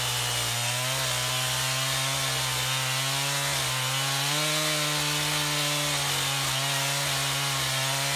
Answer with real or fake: real